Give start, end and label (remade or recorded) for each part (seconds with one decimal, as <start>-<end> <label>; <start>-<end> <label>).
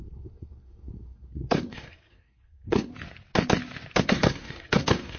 0.0-2.9 remade; 2.9-4.0 recorded; 4.0-5.2 remade